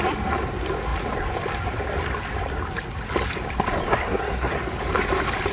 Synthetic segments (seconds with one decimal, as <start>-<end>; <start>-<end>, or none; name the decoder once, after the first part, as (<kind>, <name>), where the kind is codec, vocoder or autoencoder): 3.9-4.5 (codec, SNAC)